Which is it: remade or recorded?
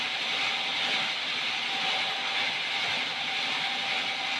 recorded